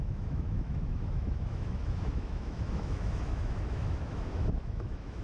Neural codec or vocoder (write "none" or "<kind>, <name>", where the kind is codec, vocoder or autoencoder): autoencoder, DAC-VAE